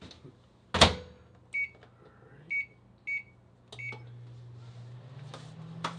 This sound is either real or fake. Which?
real